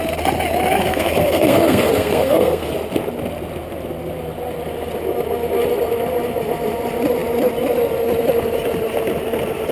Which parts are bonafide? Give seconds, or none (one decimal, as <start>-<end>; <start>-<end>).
0.0-0.8; 2.7-9.7

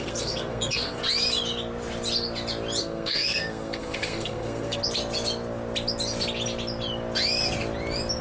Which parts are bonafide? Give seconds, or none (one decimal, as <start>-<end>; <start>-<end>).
1.0-2.8; 4.8-8.2